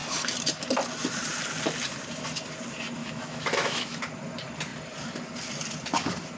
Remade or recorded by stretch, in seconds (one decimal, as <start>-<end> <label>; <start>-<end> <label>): 0.0-3.0 recorded; 3.0-4.0 remade; 4.0-6.4 recorded